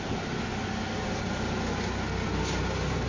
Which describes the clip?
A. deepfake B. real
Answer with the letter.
B